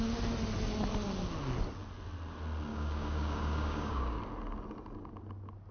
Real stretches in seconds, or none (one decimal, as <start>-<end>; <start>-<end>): 0.0-2.7; 4.2-5.7